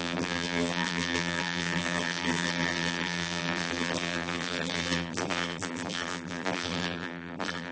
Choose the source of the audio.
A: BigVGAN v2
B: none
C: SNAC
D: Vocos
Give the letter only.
A